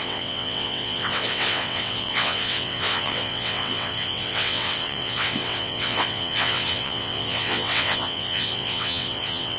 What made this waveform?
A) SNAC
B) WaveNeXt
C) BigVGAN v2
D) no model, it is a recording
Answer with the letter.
B